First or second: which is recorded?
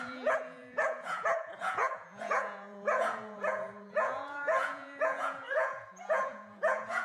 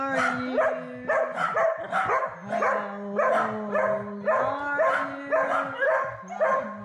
second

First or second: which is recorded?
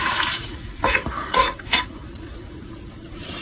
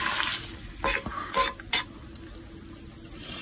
second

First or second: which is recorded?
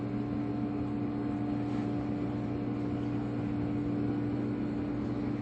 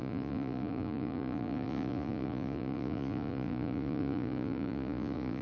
first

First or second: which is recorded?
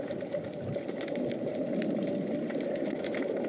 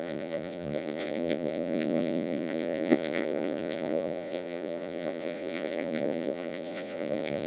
first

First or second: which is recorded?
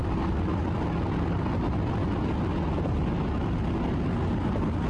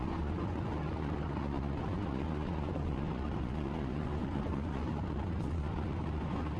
first